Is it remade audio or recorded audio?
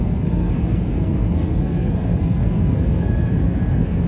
remade